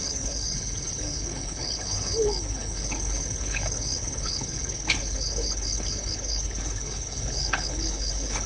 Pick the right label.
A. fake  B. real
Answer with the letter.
A